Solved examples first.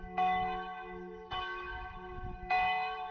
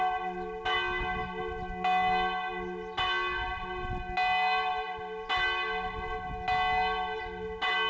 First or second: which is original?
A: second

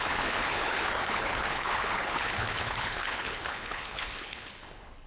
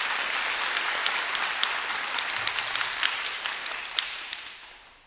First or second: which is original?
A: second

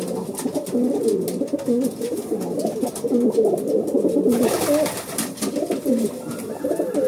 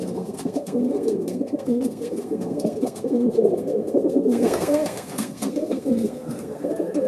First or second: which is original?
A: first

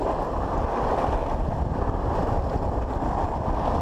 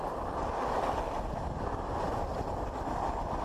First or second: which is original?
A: second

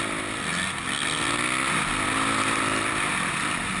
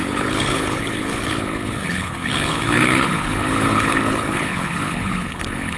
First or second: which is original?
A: first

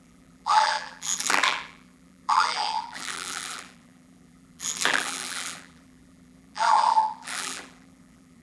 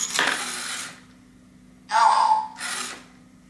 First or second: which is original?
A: second